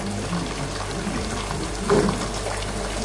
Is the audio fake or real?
real